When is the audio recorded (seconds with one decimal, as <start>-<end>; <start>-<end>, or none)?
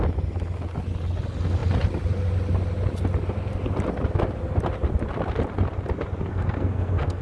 0.0-6.3